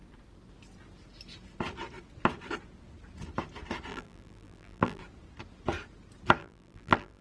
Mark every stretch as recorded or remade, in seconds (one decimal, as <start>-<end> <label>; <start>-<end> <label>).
0.0-3.9 recorded; 3.9-5.0 remade; 5.0-6.4 recorded; 6.4-7.2 remade

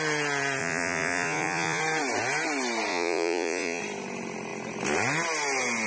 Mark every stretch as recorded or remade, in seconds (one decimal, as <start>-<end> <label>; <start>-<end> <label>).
0.0-0.6 recorded; 0.6-1.8 remade; 1.8-2.9 recorded; 2.9-3.8 remade; 3.8-5.9 recorded

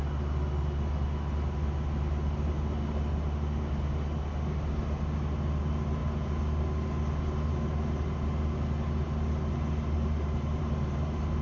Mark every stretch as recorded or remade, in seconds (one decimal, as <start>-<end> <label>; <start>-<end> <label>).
0.0-11.4 recorded

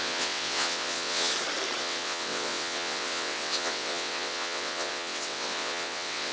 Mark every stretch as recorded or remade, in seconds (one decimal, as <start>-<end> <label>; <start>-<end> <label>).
0.0-1.3 remade; 1.3-1.8 recorded; 1.8-6.3 remade

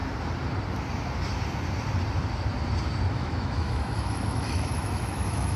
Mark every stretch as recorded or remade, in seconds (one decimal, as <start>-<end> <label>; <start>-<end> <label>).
0.0-3.1 recorded; 3.1-5.6 remade

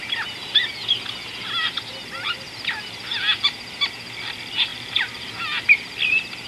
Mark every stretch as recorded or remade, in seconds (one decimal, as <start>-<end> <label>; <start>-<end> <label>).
0.0-4.7 recorded; 4.7-5.4 remade; 5.4-6.5 recorded